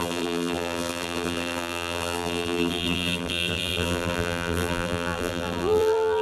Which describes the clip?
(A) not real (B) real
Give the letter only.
A